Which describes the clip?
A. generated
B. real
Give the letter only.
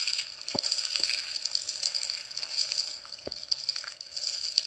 A